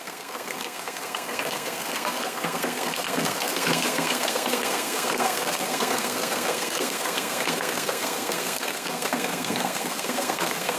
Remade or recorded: remade